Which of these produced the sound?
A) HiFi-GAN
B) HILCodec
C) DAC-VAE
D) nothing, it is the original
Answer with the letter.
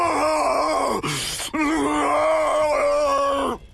D